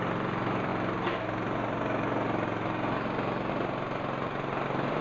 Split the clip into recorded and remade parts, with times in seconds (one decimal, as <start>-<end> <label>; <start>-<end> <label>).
0.0-0.7 remade; 0.7-3.5 recorded; 3.5-5.0 remade